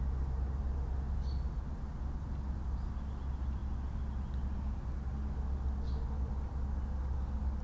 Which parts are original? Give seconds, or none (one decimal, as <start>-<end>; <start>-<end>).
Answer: 0.0-7.6